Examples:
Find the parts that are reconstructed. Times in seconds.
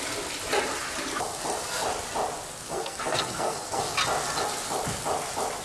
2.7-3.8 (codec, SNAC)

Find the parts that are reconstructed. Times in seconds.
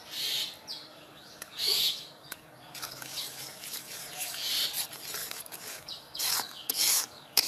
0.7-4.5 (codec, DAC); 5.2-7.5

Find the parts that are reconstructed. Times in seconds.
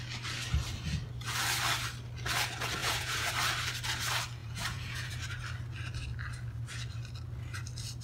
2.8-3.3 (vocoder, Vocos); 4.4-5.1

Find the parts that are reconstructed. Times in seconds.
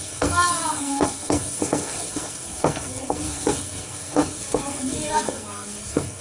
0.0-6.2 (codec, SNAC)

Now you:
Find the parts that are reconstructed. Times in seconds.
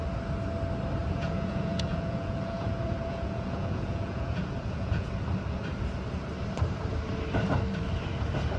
1.0-5.1 (vocoder, Vocos)